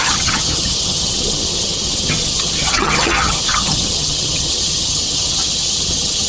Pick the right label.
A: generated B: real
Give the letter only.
A